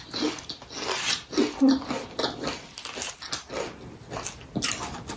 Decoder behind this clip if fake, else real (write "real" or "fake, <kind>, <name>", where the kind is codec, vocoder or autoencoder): real